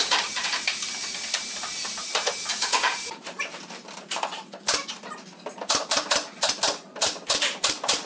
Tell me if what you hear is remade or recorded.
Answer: remade